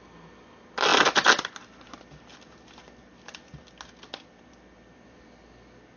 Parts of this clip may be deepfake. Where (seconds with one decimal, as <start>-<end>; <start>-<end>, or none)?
none